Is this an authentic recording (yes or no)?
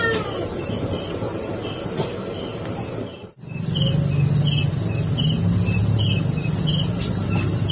yes